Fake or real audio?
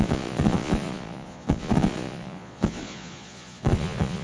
fake